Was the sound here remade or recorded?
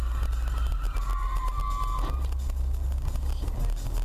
recorded